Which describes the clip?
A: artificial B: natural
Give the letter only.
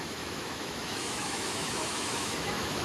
A